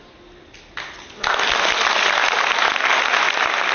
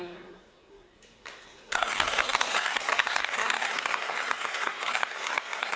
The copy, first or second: second